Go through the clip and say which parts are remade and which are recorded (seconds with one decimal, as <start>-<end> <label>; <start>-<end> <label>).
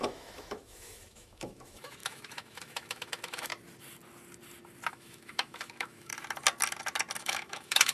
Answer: 0.0-3.5 remade; 3.5-4.9 recorded; 4.9-6.1 remade; 6.1-7.2 recorded; 7.2-7.9 remade